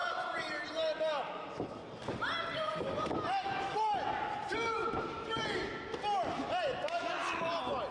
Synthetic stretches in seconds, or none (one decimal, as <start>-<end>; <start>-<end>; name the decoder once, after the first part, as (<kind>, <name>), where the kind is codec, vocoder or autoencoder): 0.0-1.5 (vocoder, BigVGAN v2); 4.8-5.4